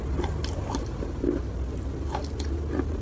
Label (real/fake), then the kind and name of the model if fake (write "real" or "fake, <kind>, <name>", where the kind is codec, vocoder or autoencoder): real